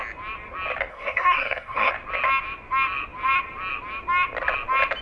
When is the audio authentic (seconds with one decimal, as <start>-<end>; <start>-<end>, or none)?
0.0-0.9; 1.9-5.0